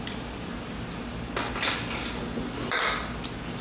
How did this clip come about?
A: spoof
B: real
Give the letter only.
B